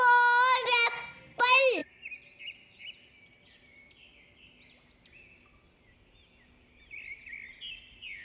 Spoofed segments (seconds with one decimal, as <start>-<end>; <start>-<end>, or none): none